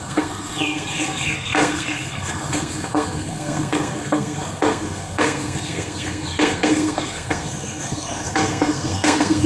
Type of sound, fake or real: fake